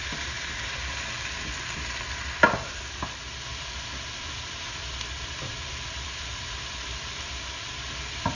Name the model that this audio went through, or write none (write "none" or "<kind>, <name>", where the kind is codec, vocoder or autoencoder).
vocoder, BigVGAN v2